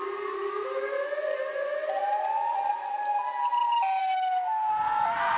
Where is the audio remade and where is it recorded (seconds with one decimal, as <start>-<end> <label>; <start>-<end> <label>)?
0.0-4.0 recorded; 4.0-4.7 remade; 4.7-5.4 recorded

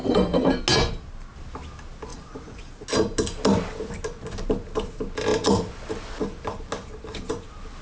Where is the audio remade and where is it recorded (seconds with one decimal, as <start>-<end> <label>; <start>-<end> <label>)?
0.0-0.6 remade; 0.6-7.8 recorded